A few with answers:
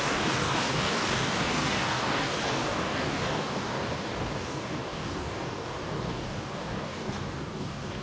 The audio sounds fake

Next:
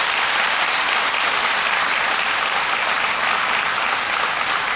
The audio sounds real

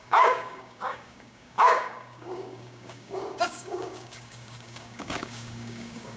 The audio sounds fake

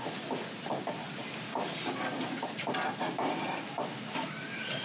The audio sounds real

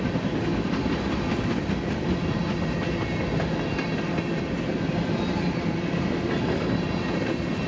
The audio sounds real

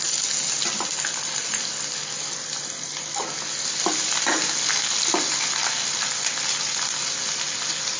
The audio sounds real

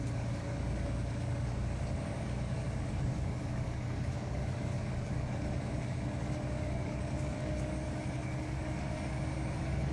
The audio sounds fake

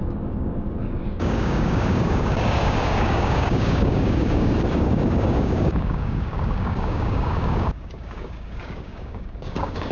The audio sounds fake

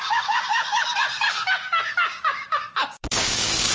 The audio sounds fake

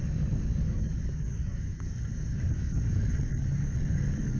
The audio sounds fake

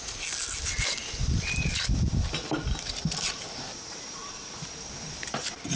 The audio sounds real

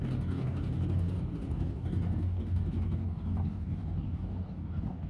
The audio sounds fake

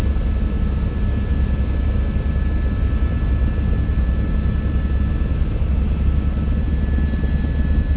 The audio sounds real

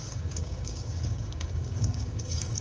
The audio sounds fake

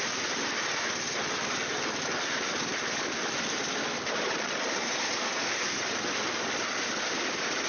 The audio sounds real